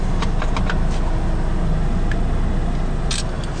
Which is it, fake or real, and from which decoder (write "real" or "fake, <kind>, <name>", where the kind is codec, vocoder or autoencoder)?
real